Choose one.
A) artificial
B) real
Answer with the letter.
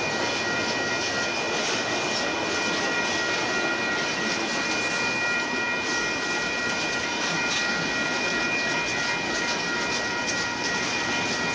B